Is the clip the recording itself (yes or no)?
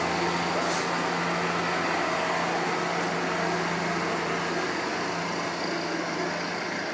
yes